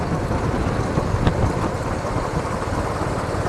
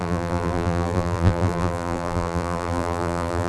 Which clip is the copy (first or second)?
second